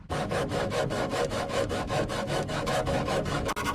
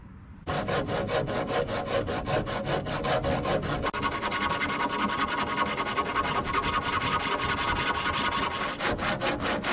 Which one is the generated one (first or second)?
first